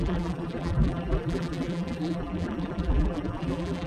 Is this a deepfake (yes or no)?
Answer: yes